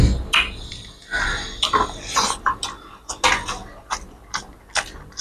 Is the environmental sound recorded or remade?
recorded